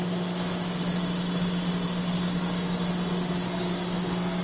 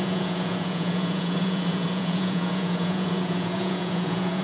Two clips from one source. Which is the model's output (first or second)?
second